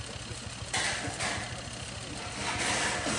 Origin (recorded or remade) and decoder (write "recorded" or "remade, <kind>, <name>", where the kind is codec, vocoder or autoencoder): recorded